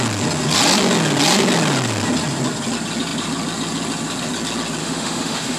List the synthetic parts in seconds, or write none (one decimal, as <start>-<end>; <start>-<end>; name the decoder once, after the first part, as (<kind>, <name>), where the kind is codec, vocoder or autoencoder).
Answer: 4.8-5.6 (autoencoder, DAC-VAE)